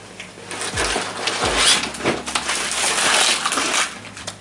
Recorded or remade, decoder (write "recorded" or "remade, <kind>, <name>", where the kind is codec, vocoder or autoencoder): recorded